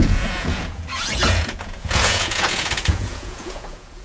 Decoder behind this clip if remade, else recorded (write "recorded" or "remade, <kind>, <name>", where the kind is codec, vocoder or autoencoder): remade, vocoder, Vocos